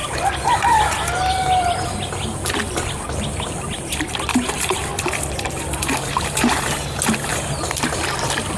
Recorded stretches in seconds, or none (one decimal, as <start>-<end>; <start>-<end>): 0.0-4.3; 4.9-5.5; 7.3-8.6